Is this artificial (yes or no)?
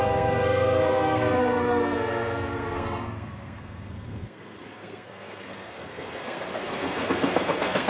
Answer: yes